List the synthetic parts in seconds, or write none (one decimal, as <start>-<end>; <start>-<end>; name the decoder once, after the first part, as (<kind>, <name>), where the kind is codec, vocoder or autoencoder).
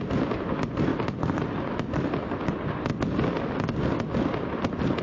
none